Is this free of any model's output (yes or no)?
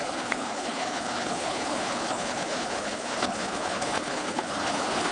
no